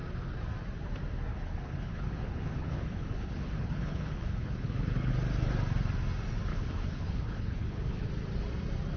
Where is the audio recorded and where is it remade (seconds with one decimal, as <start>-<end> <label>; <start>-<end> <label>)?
0.0-1.3 recorded; 1.3-5.1 remade; 5.1-6.5 recorded; 6.5-8.1 remade; 8.1-9.0 recorded

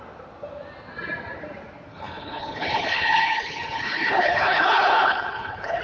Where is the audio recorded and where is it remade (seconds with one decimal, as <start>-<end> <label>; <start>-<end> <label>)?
0.0-1.9 recorded; 1.9-5.8 remade

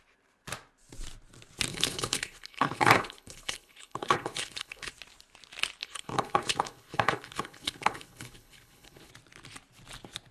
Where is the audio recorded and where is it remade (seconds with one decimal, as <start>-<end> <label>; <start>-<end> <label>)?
0.0-1.7 recorded; 1.7-4.9 remade; 4.9-5.8 recorded; 5.8-9.1 remade; 9.1-10.3 recorded